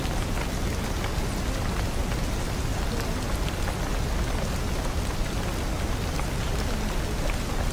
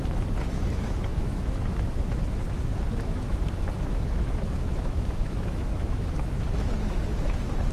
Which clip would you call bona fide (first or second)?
first